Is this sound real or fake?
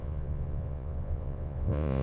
fake